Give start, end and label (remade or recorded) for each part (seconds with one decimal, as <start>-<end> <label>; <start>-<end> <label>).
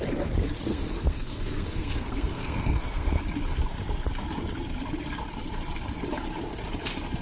0.0-0.7 recorded; 0.7-3.2 remade; 3.2-7.2 recorded